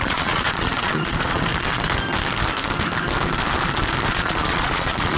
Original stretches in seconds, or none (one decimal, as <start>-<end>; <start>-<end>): 1.5-4.1